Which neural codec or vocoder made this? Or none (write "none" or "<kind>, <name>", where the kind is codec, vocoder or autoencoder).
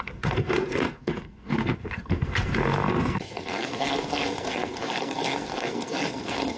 codec, SNAC